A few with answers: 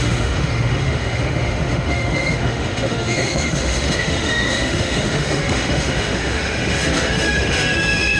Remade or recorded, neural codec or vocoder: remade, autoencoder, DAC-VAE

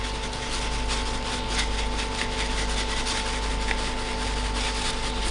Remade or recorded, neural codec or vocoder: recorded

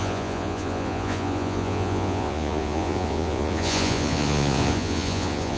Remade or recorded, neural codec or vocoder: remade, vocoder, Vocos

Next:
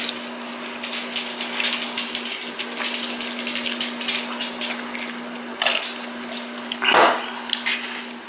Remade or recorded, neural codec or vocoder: recorded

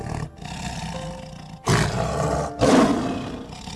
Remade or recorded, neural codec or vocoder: recorded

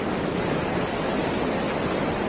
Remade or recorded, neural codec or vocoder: recorded